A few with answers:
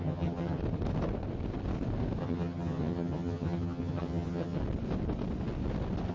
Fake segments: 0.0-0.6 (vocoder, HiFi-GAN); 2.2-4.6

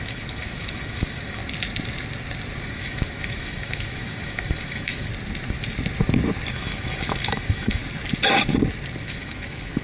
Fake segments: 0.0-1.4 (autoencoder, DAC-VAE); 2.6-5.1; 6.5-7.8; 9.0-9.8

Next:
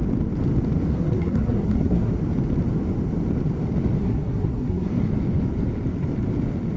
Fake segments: 0.9-2.1 (codec, SNAC); 4.0-5.1

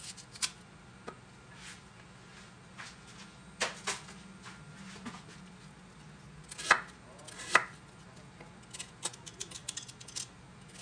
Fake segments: none

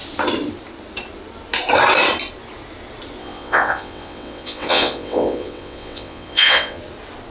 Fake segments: 3.2-6.8 (vocoder, WaveNeXt)

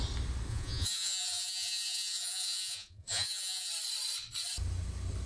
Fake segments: 0.5-3.7 (vocoder, Vocos)

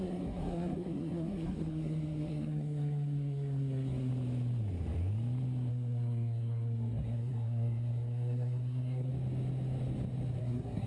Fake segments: 0.0-4.1 (codec, SNAC); 5.7-9.1; 10.4-10.9